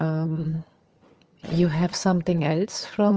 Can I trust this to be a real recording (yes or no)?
no